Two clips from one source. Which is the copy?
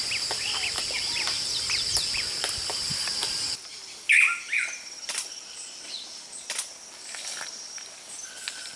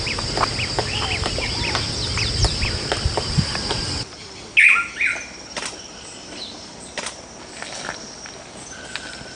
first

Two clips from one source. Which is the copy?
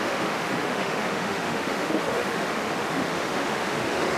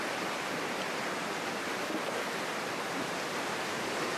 first